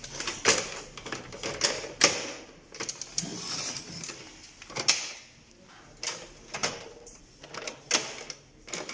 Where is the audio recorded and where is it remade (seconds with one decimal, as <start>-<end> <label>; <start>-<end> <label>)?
0.0-3.3 recorded; 3.3-3.8 remade; 3.8-6.6 recorded; 6.6-7.2 remade; 7.2-8.9 recorded